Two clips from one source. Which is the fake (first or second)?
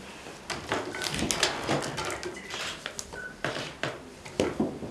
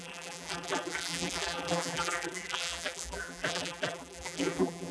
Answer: second